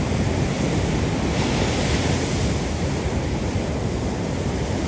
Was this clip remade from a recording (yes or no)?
no